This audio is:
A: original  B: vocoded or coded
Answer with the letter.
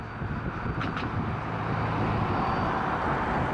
A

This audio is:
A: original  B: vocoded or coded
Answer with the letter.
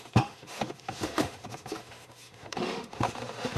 B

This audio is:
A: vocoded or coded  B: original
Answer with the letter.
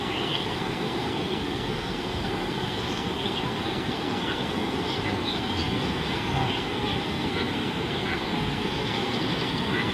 A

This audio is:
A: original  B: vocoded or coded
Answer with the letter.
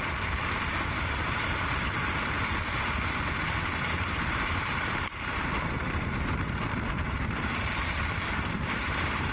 B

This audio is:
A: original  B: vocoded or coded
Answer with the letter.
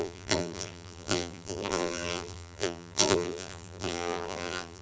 B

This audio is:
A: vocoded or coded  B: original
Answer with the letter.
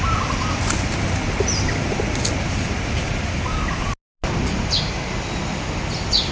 B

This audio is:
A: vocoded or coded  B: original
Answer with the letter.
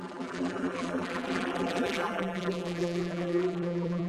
A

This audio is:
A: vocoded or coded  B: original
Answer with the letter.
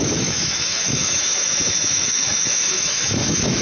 A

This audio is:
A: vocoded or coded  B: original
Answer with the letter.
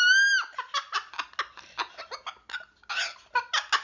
B